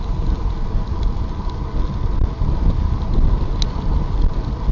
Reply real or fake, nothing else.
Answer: real